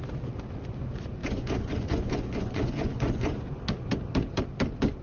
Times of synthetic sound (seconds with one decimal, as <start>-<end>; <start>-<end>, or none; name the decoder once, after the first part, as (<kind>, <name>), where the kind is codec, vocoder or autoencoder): 1.2-3.6 (vocoder, Vocos)